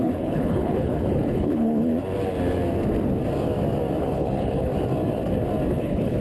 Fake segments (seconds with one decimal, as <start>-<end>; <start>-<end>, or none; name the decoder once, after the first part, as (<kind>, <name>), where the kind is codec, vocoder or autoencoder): 0.0-1.9 (codec, HILCodec); 4.0-4.7; 5.7-6.2